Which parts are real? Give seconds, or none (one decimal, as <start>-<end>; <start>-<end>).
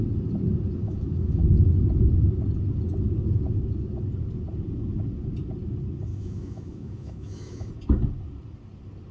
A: 0.0-0.8; 1.4-6.1; 7.7-9.1